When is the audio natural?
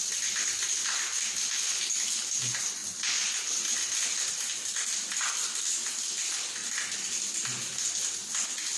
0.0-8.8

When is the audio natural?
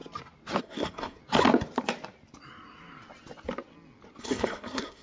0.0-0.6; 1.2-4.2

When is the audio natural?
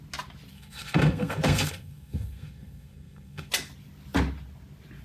0.0-0.5; 3.5-5.0